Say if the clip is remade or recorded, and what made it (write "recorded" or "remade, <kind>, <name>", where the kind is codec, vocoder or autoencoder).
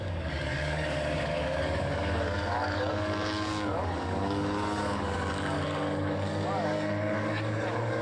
remade, codec, DAC